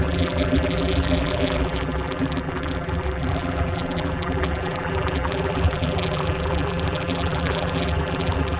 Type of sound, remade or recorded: remade